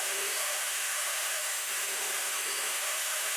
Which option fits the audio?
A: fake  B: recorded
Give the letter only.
A